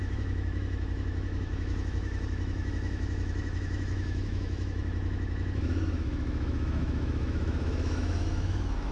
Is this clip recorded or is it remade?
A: remade